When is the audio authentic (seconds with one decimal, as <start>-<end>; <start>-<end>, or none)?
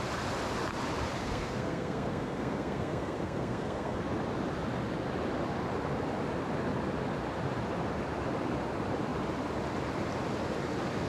0.0-1.2; 4.0-11.1